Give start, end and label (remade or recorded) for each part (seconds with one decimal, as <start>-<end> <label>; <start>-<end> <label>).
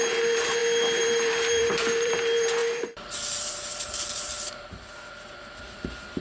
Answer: 0.0-6.2 remade